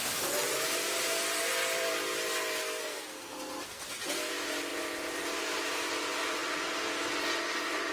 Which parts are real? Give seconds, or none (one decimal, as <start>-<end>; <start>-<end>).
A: 0.0-2.6; 4.3-7.9